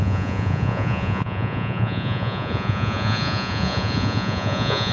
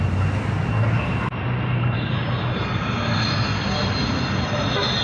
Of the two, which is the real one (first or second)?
second